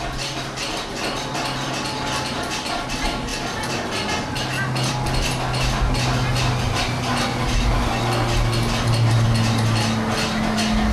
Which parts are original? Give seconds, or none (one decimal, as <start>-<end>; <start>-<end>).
0.0-10.9